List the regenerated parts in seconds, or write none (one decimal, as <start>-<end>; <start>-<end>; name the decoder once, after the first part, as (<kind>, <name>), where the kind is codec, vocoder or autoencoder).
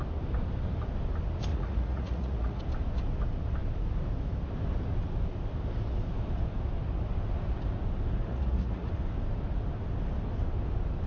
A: 1.5-2.6 (vocoder, Vocos); 8.3-8.9